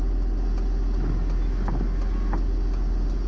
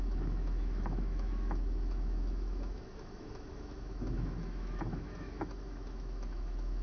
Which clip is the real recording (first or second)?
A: first